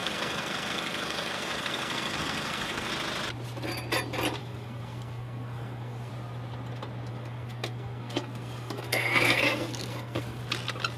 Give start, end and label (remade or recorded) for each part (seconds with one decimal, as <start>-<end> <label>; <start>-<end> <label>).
0.0-2.9 remade; 2.9-4.4 recorded; 4.4-6.1 remade; 6.1-7.1 recorded; 7.1-10.4 remade; 10.4-11.0 recorded